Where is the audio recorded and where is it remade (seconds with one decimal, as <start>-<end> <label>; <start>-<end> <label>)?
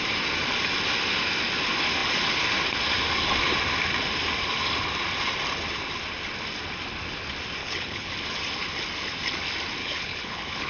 0.0-7.6 recorded; 7.6-8.1 remade; 8.1-9.8 recorded; 9.8-10.7 remade